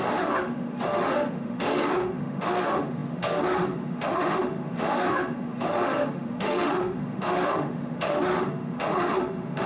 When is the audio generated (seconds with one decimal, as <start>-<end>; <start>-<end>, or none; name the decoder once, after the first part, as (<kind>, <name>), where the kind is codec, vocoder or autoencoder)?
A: 0.0-9.7 (autoencoder, DAC-VAE)